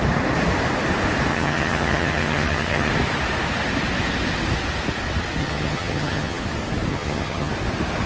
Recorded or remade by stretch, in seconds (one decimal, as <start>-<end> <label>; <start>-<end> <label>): 0.0-1.3 recorded; 1.3-2.9 remade; 2.9-5.4 recorded; 5.4-6.4 remade; 6.4-6.9 recorded; 6.9-7.5 remade; 7.5-8.1 recorded